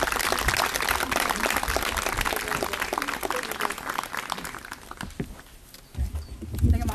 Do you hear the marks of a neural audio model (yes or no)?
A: no